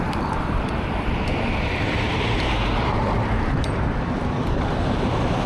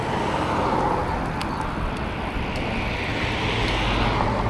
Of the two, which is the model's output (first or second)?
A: first